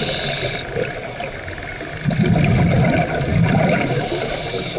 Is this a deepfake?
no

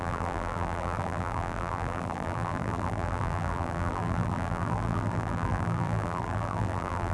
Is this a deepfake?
yes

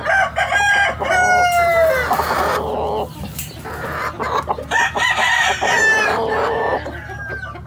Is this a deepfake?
no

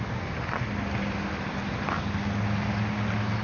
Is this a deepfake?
no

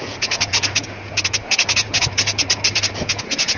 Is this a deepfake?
yes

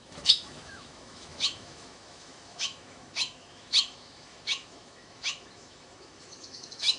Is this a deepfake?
yes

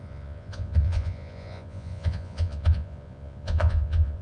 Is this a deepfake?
yes